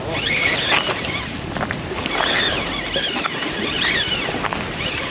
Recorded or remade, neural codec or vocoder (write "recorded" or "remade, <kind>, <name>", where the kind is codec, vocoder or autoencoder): recorded